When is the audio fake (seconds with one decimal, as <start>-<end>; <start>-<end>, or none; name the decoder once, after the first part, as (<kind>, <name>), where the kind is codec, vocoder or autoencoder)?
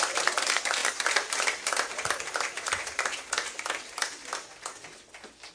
0.0-4.2 (vocoder, BigVGAN v2)